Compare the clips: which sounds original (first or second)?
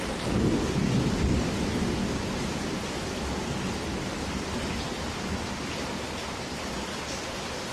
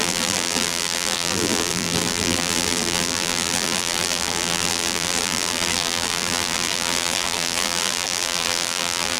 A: first